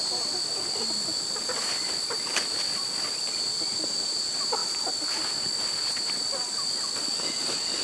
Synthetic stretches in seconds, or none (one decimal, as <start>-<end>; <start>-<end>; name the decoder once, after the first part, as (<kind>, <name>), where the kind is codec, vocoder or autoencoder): none